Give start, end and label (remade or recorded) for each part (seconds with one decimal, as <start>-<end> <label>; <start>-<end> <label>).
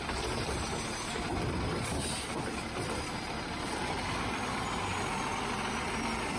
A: 0.0-6.4 recorded